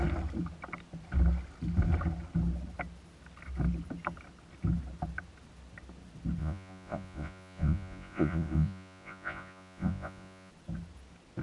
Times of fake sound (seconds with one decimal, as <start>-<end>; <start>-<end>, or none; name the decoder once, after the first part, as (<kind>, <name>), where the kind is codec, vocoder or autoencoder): 6.4-10.5 (vocoder, Vocos)